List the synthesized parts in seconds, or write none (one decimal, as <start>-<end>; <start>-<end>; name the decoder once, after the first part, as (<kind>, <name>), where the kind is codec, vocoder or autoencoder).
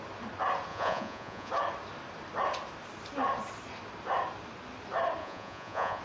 0.7-1.5 (vocoder, Vocos); 5.2-6.0